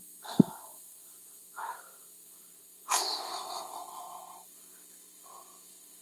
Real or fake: fake